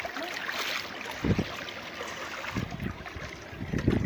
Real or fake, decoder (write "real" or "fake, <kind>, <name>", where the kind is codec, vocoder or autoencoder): real